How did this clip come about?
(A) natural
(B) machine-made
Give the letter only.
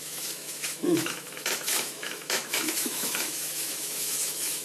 B